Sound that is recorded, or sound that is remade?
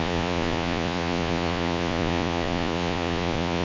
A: remade